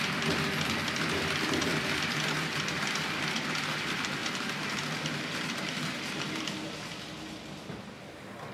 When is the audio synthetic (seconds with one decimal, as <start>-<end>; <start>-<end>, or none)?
1.7-2.2; 4.2-6.4